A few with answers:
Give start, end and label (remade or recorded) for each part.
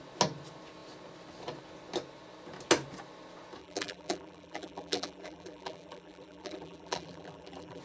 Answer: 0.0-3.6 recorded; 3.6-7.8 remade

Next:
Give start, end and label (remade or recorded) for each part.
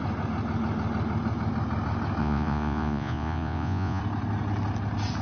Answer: 0.0-2.2 recorded; 2.2-4.0 remade; 4.0-5.2 recorded